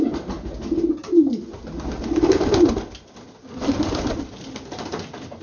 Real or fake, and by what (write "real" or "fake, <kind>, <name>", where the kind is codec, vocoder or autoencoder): real